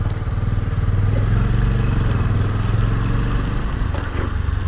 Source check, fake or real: real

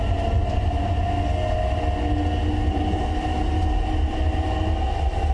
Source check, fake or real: real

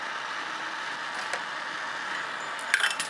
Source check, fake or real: real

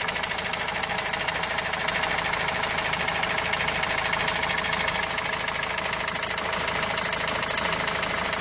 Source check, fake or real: real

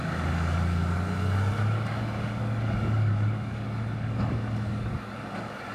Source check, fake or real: fake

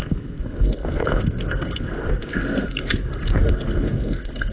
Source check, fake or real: fake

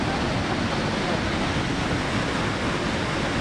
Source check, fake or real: real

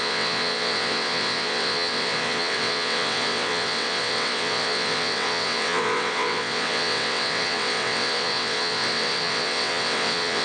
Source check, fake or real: fake